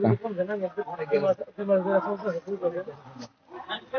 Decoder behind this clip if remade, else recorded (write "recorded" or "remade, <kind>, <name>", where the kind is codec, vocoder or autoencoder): recorded